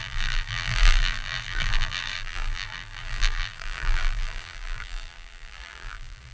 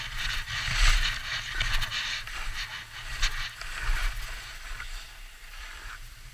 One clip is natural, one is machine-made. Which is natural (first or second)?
second